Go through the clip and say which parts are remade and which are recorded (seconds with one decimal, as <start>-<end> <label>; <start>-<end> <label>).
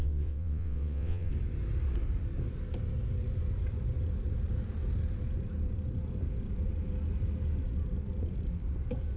0.0-1.3 remade; 1.3-9.2 recorded